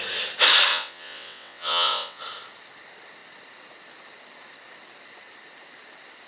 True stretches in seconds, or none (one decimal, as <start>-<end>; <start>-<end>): 0.0-0.7; 2.2-6.3